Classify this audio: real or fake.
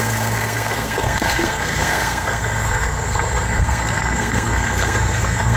fake